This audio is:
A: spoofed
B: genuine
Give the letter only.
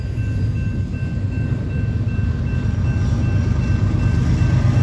B